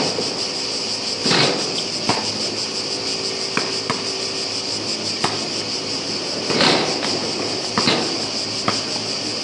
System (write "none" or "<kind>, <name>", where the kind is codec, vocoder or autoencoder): none